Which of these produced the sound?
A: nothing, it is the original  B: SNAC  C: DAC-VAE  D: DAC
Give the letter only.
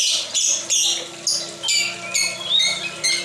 A